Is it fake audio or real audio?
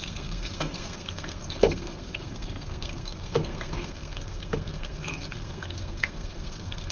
fake